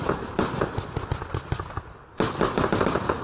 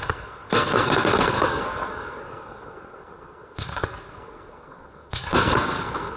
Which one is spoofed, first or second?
second